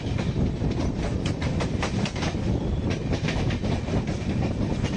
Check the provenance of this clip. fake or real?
real